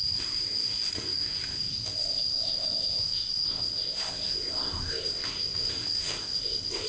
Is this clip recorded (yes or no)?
no